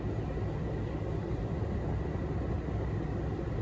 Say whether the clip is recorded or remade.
recorded